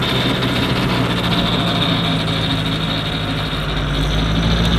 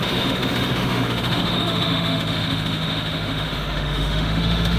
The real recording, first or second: first